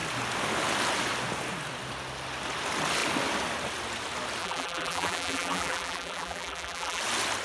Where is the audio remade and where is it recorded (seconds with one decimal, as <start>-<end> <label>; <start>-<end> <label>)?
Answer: 0.0-4.4 recorded; 4.4-7.0 remade; 7.0-7.4 recorded